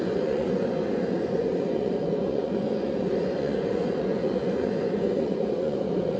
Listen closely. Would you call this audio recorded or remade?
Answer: remade